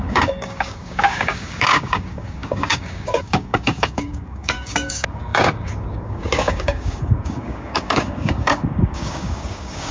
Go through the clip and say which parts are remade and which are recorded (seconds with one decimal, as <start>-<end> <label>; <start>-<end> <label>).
0.0-9.9 remade